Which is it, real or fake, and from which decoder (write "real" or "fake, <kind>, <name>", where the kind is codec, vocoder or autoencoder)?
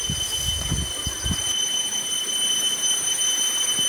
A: real